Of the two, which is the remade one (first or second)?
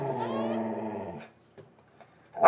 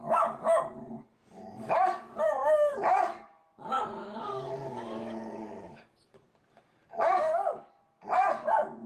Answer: second